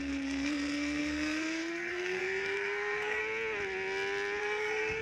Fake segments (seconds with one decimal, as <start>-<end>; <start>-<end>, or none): 0.0-3.2; 4.4-5.0